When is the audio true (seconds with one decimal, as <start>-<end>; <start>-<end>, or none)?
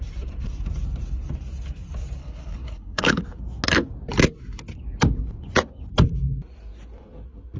0.0-2.2; 3.2-7.6